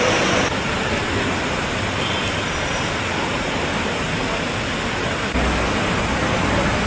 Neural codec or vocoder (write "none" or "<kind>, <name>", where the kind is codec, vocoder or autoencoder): none